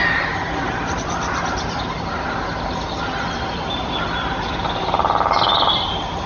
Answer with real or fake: real